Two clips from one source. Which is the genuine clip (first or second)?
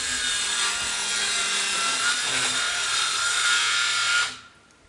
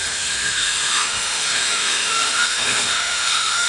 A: first